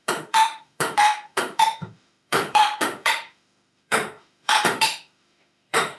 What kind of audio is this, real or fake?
fake